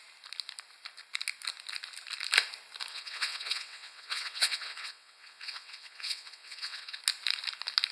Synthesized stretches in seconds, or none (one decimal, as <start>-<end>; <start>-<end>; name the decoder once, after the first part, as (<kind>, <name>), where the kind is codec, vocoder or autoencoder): 2.9-7.0 (vocoder, WaveNeXt)